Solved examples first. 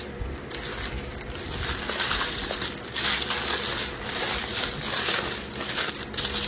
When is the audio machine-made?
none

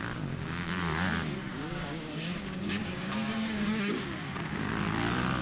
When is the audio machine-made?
1.5-4.7 (codec, DAC)

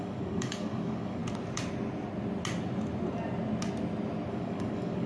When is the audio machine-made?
0.0-1.2 (codec, DAC); 4.3-5.1